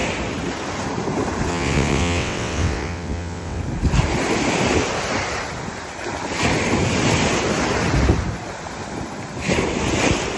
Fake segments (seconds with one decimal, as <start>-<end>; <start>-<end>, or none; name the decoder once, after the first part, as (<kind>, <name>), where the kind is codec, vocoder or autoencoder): 1.5-3.6 (vocoder, WaveNeXt)